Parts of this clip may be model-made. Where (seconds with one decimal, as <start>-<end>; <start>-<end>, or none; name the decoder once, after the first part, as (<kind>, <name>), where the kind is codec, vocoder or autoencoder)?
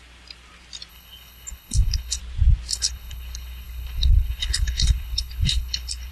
0.9-2.2 (codec, HILCodec); 2.7-6.1